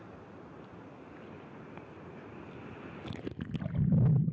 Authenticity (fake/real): real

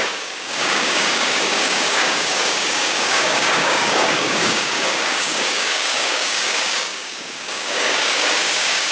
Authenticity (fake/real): fake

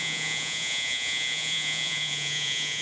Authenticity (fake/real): fake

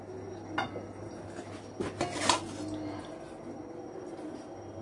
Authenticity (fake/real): real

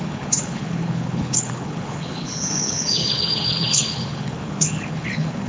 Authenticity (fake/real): fake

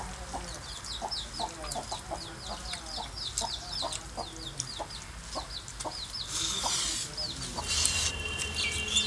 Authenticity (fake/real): real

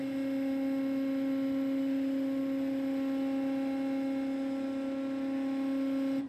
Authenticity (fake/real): real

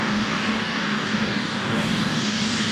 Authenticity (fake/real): fake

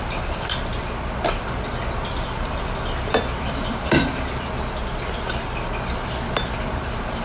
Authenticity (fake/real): real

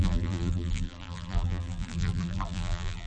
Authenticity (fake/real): fake